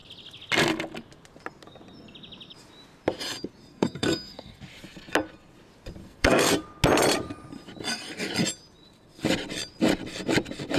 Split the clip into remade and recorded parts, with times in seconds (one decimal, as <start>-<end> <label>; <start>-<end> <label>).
0.0-3.7 recorded; 3.7-4.6 remade; 4.6-6.0 recorded; 6.0-6.5 remade; 6.5-10.8 recorded